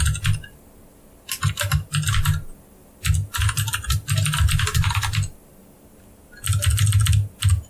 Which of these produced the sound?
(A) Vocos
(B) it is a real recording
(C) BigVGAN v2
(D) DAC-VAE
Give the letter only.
B